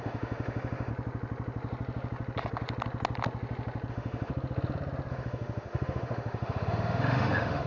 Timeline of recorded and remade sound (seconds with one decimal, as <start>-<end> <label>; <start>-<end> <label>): 0.0-0.9 remade; 0.9-3.9 recorded; 3.9-4.3 remade; 4.3-5.1 recorded; 5.1-7.7 remade